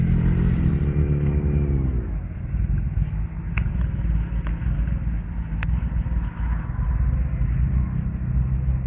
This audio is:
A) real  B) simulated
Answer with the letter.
A